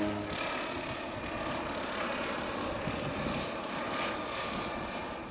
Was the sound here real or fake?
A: real